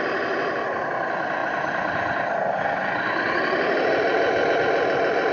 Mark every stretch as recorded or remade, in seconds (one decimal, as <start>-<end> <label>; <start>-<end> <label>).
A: 0.0-5.3 recorded